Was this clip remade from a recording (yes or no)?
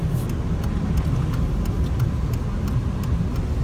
no